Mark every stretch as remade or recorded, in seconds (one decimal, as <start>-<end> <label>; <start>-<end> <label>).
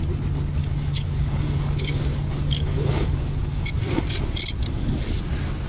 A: 0.0-0.6 recorded; 0.6-4.0 remade; 4.0-5.7 recorded